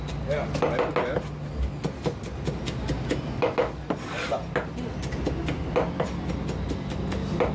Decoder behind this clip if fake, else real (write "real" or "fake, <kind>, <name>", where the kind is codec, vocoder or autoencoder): real